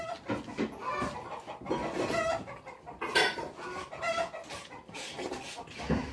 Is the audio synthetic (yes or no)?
no